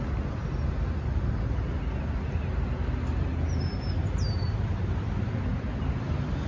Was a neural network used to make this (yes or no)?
no